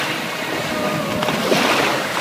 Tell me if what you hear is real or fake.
real